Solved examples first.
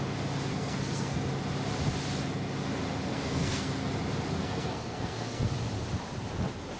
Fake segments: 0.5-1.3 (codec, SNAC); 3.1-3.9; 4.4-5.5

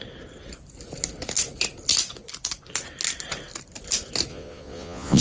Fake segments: 4.3-5.2 (vocoder, Vocos)

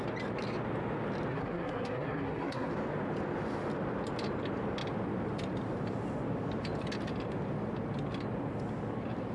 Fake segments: 1.3-2.7 (codec, SNAC)

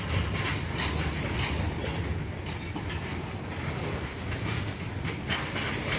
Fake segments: 4.1-4.8 (codec, DAC)

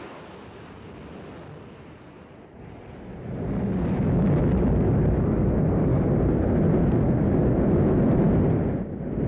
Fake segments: none

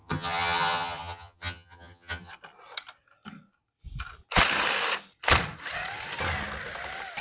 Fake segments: 0.0-2.3 (vocoder, HiFi-GAN)

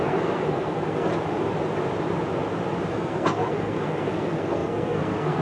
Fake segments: 0.0-1.1 (codec, SNAC); 2.9-5.4